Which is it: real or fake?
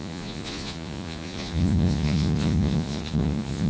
fake